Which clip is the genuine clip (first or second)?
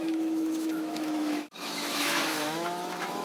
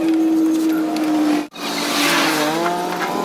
second